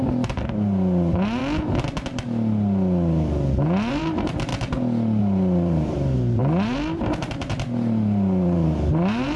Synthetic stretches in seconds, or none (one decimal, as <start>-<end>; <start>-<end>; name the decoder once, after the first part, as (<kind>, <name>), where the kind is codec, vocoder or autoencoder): 0.0-1.4 (vocoder, BigVGAN v2); 3.9-4.5; 5.2-9.4